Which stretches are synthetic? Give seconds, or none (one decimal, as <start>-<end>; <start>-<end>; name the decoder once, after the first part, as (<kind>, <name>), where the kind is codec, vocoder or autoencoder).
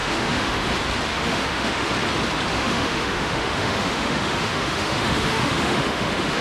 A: 0.0-0.7 (autoencoder, DAC-VAE); 1.1-1.9; 2.5-6.4